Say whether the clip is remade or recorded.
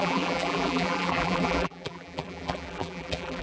remade